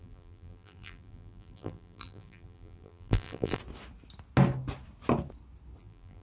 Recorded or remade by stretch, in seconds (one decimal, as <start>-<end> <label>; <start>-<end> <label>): 0.0-3.6 remade; 3.6-5.8 recorded; 5.8-6.2 remade